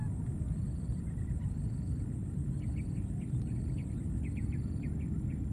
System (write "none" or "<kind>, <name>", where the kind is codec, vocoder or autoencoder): none